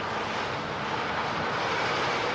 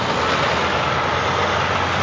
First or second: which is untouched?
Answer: second